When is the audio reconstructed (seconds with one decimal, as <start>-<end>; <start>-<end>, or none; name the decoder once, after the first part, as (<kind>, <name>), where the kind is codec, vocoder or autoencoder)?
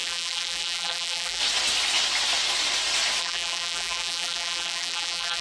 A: 0.0-1.4 (vocoder, BigVGAN v2); 3.2-5.4